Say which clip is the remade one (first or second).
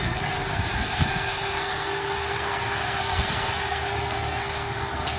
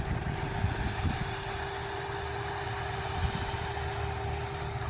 first